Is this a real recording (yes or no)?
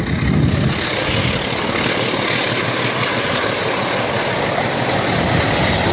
yes